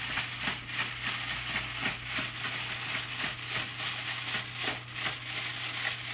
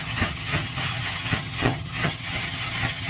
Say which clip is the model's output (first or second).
second